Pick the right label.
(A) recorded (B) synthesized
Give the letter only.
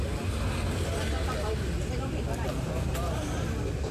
A